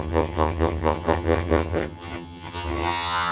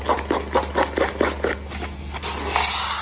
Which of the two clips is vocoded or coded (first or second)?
first